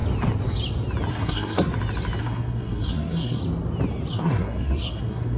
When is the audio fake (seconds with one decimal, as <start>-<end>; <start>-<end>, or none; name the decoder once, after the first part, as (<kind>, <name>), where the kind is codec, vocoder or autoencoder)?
1.1-1.7 (codec, SNAC); 2.2-3.4; 4.1-5.4

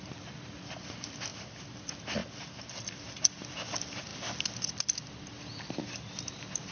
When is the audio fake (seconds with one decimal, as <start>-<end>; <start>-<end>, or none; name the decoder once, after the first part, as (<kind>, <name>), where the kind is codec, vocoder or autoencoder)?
0.0-2.2 (vocoder, BigVGAN v2); 2.8-4.1; 5.7-6.7

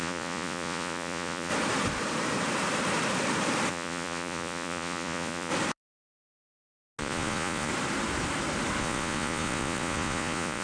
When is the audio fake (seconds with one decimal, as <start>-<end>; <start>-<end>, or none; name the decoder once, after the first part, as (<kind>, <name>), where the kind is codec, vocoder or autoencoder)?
0.0-1.5 (vocoder, Vocos); 3.7-5.5; 7.0-7.7; 8.8-10.6

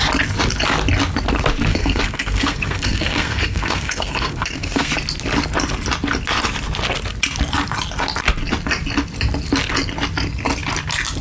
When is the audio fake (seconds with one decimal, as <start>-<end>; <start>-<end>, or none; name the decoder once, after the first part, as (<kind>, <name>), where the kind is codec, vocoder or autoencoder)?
1.7-4.9 (codec, SNAC)

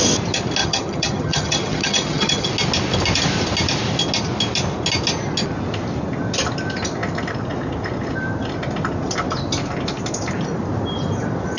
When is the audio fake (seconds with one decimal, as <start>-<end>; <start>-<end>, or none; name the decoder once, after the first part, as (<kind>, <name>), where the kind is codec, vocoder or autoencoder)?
0.6-2.5 (vocoder, HiFi-GAN)